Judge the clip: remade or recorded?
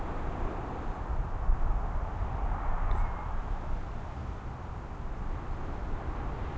recorded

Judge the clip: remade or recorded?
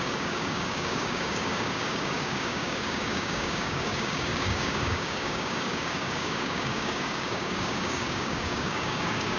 remade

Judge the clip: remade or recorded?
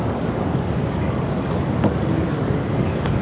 remade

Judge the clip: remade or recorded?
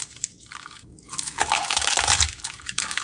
remade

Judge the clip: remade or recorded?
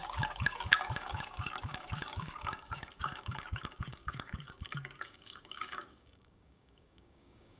remade